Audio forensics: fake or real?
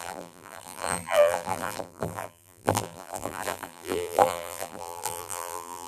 fake